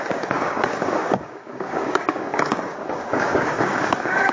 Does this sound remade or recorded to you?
remade